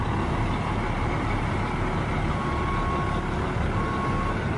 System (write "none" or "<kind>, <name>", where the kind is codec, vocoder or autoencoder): none